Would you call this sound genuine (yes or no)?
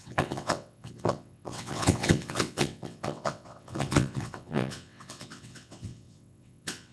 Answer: no